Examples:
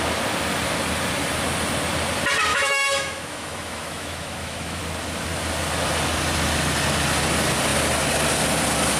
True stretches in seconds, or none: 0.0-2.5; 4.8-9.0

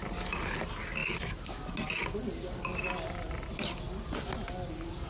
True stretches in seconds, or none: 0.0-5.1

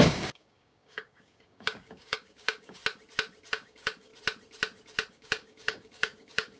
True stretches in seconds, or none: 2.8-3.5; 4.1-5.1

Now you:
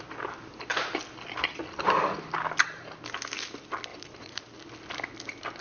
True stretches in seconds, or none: 0.0-3.9; 4.4-5.6

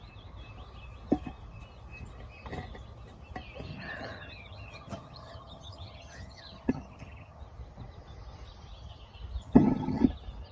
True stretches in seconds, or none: 0.0-3.7; 7.4-9.4; 10.0-10.5